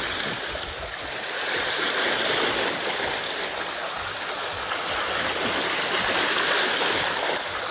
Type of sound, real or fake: fake